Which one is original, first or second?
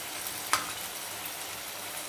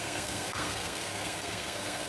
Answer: first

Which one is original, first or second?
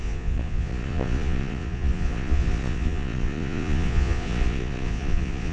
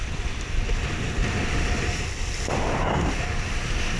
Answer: second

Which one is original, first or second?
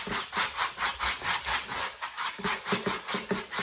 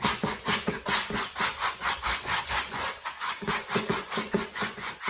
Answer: first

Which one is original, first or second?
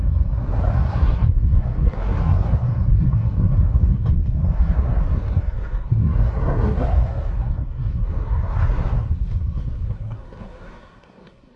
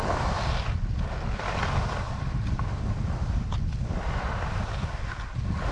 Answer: second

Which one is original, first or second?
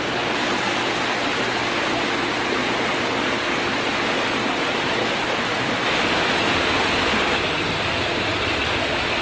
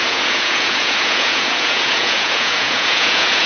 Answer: first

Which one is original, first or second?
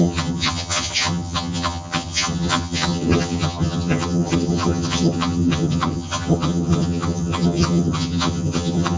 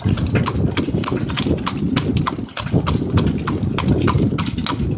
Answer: second